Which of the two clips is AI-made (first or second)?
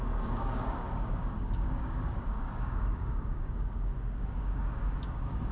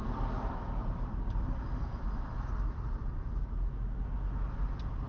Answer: first